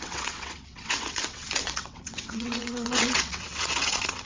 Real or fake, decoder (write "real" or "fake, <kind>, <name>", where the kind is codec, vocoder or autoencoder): fake, vocoder, WaveNeXt